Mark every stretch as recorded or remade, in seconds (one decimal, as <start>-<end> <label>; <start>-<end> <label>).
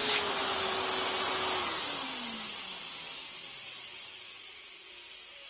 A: 0.0-3.2 recorded; 3.2-4.9 remade; 4.9-5.5 recorded